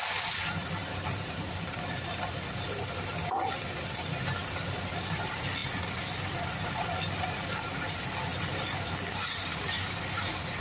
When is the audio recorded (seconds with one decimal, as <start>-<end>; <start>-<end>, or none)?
5.6-6.7; 8.3-9.3